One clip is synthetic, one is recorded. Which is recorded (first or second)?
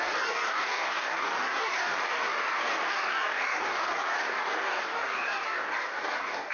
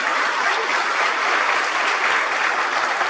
second